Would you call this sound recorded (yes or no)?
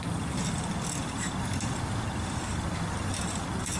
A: yes